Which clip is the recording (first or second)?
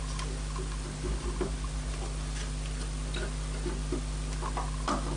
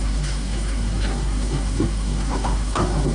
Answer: first